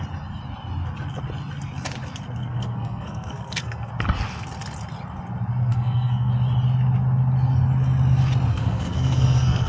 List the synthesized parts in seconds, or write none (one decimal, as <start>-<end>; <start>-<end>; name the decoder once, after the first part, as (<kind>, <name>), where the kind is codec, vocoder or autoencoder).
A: 2.4-3.9 (codec, SNAC); 5.6-6.3; 8.5-9.7